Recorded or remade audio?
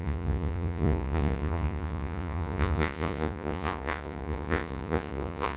remade